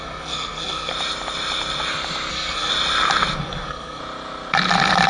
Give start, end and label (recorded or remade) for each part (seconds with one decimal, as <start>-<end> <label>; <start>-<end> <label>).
0.0-0.9 remade; 0.9-2.3 recorded; 2.3-2.7 remade; 2.7-3.4 recorded; 3.4-4.0 remade; 4.0-5.1 recorded